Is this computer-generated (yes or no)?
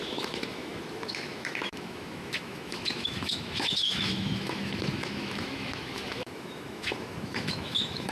yes